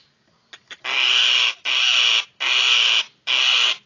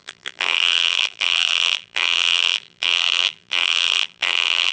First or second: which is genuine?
first